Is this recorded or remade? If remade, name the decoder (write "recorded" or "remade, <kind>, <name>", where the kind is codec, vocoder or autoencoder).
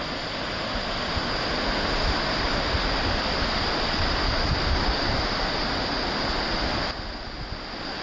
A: recorded